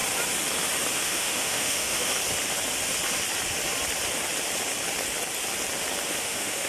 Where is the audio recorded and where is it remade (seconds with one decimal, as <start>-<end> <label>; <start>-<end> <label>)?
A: 0.0-0.9 recorded; 0.9-2.1 remade; 2.1-6.1 recorded; 6.1-6.7 remade